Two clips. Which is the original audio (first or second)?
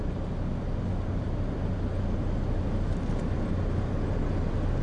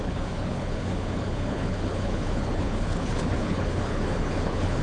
first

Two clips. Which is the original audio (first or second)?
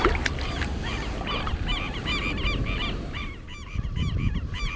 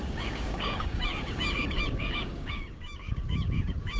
first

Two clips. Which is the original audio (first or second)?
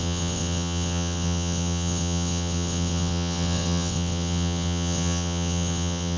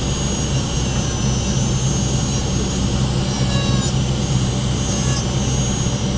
second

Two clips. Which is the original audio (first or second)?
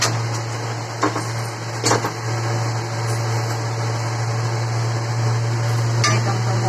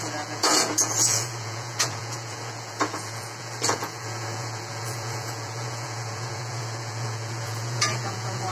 first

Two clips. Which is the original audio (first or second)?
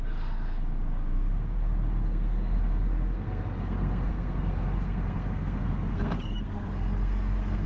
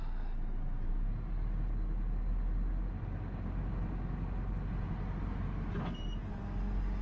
second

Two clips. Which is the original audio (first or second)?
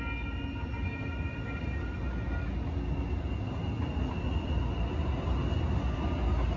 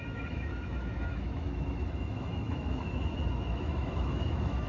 first